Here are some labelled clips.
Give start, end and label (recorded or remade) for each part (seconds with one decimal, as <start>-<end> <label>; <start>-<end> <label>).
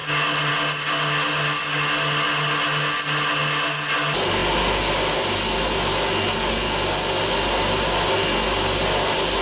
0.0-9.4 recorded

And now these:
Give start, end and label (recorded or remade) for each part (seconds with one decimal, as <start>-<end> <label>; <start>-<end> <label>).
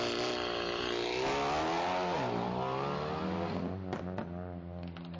0.0-5.2 recorded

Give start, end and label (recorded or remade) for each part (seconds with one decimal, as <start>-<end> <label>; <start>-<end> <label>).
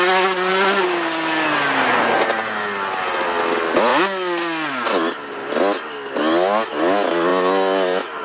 0.0-8.2 recorded